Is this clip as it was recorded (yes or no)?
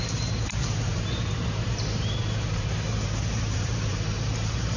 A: no